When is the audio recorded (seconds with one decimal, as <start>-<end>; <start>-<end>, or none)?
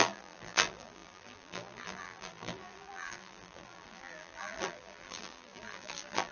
none